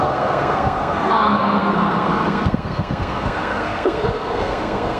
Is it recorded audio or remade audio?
remade